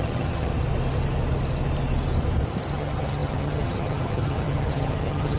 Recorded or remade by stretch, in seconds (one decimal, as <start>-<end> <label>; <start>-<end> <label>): 0.0-0.5 remade; 0.5-2.7 recorded; 2.7-5.4 remade